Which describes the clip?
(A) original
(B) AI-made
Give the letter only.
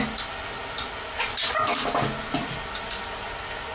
A